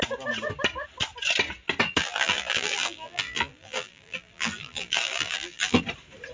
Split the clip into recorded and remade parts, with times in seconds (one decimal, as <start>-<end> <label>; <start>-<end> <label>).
0.0-2.0 recorded; 2.0-5.8 remade; 5.8-6.3 recorded